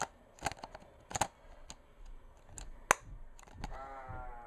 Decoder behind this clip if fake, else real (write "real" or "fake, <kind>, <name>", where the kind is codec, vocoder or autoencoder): real